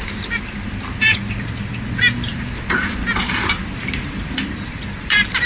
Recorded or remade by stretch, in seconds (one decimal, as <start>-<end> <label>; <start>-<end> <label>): 0.0-2.3 remade; 2.3-3.3 recorded; 3.3-5.5 remade

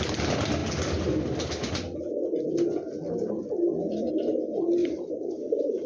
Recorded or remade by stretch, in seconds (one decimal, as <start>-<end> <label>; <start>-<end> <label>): 0.0-4.8 recorded; 4.8-5.9 remade

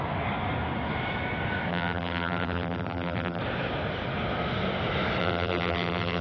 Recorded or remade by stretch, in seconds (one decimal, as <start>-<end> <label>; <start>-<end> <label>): 0.0-1.7 recorded; 1.7-3.4 remade; 3.4-5.2 recorded; 5.2-6.2 remade